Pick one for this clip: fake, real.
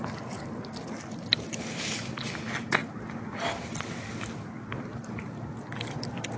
real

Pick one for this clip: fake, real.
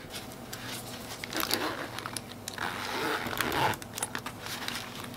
real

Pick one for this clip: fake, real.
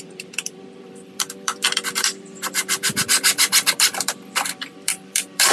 fake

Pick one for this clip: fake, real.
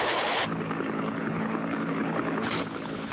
fake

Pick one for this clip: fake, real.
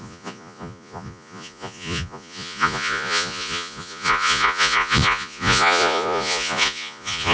fake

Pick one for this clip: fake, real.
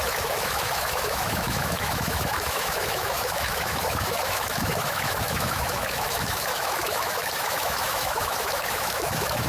fake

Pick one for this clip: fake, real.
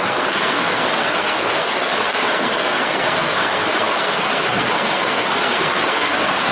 fake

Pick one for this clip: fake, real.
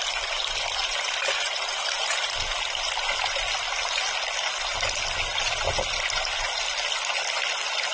real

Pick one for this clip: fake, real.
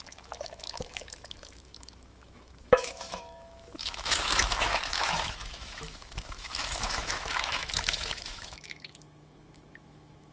fake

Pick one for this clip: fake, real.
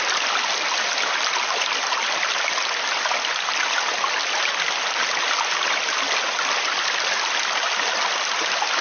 real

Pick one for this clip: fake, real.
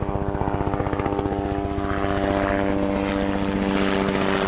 real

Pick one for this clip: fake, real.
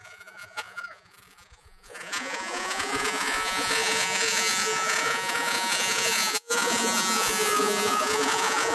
fake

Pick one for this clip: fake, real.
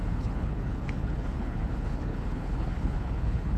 fake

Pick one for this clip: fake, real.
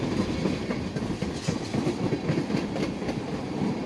real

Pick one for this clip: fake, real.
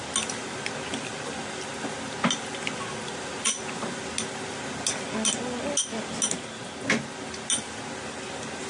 real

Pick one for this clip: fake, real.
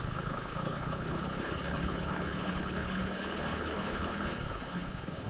fake